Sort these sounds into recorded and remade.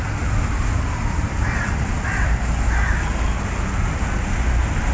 recorded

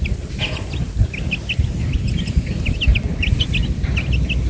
recorded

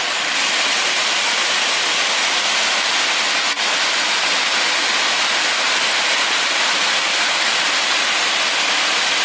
recorded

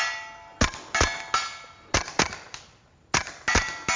recorded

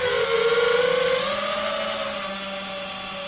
recorded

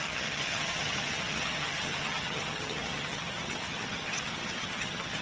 remade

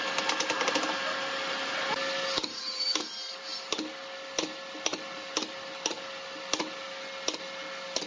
recorded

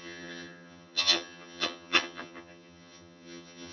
remade